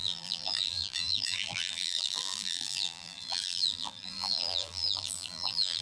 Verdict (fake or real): fake